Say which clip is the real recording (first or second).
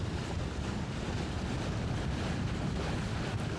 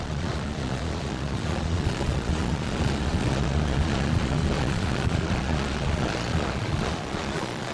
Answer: first